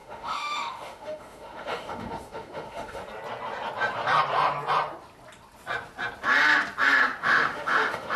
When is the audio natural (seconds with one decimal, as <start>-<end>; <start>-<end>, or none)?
3.0-7.2